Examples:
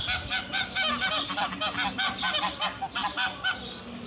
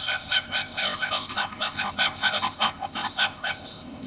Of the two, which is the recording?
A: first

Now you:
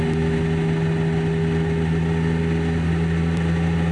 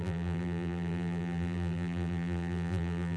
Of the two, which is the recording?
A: first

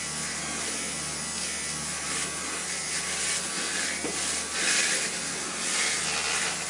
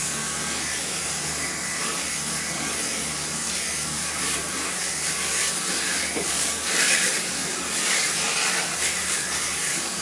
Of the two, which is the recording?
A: first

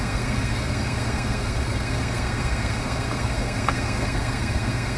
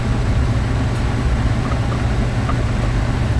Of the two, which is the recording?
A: second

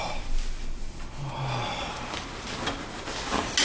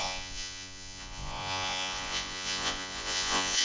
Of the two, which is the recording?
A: first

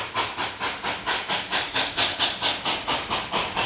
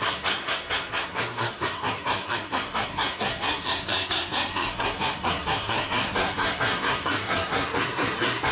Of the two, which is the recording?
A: first